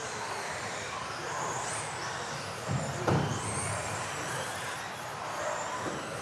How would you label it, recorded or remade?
remade